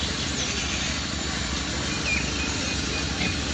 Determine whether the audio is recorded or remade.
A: recorded